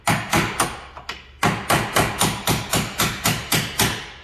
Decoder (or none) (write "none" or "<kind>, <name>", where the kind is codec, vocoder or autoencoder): none